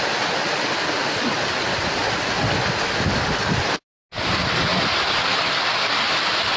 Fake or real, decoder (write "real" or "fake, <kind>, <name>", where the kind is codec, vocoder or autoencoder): real